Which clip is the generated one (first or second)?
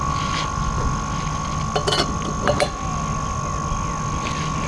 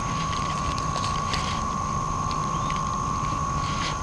second